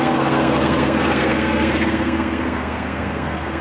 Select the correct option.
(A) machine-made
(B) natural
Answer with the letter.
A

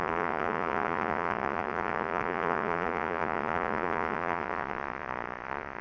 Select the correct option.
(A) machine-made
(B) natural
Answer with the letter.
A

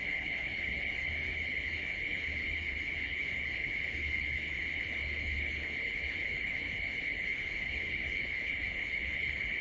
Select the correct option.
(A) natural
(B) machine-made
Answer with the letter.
B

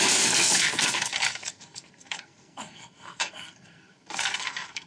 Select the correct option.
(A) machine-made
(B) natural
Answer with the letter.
A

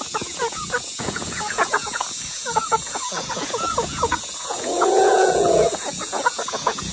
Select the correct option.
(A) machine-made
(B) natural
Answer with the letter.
A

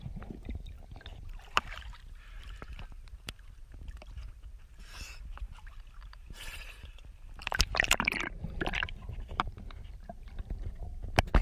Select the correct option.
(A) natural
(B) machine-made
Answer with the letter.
B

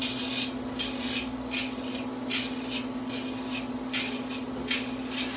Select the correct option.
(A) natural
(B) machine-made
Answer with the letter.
A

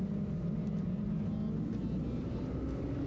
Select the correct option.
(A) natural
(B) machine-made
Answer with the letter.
A